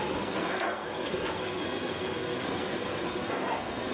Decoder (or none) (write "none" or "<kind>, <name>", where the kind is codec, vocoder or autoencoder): codec, SNAC